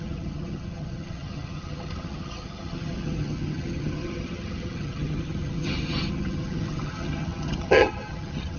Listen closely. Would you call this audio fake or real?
fake